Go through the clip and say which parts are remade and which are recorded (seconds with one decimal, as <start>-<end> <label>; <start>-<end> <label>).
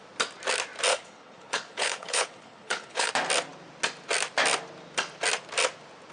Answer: 0.0-0.9 recorded; 0.9-3.1 remade; 3.1-6.1 recorded